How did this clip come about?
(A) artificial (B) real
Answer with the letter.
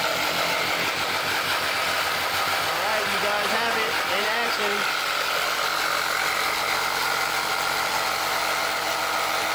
B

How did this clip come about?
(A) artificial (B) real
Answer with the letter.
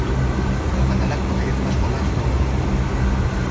B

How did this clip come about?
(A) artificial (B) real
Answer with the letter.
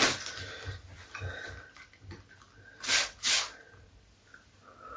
B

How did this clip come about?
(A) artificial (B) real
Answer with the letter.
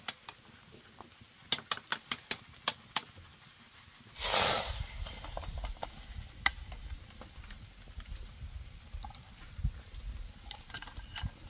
B